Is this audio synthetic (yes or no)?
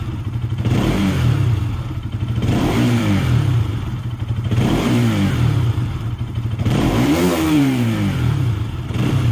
yes